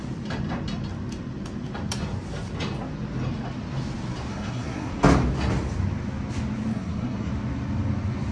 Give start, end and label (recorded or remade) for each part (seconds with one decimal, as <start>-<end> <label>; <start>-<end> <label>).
0.0-4.3 recorded; 4.3-4.9 remade; 4.9-6.7 recorded; 6.7-7.3 remade; 7.3-8.3 recorded

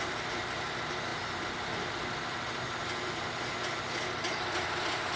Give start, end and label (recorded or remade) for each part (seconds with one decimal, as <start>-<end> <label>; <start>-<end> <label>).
0.0-5.2 recorded

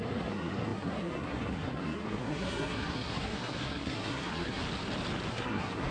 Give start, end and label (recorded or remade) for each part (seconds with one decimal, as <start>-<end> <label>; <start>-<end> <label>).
0.0-4.6 remade; 4.6-5.3 recorded; 5.3-5.9 remade

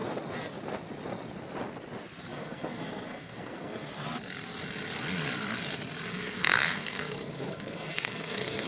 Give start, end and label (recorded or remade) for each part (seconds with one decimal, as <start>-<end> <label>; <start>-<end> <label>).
0.0-2.3 recorded; 2.3-3.9 remade; 3.9-6.1 recorded; 6.1-8.7 remade

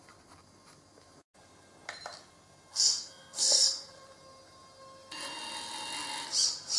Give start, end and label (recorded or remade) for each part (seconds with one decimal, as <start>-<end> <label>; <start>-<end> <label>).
0.0-2.7 recorded; 2.7-3.9 remade; 3.9-6.8 recorded

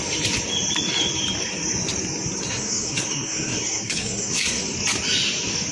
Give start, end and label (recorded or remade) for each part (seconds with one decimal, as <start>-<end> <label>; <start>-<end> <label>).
0.0-2.4 recorded; 2.4-4.6 remade; 4.6-5.7 recorded

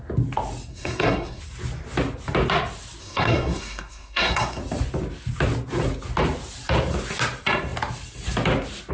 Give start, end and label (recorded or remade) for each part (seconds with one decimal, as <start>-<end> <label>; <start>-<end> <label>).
0.0-0.7 recorded; 0.7-1.4 remade; 1.4-3.0 recorded; 3.0-4.6 remade; 4.6-8.9 recorded